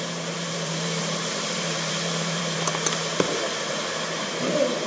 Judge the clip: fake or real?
fake